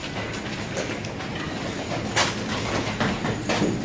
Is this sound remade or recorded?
recorded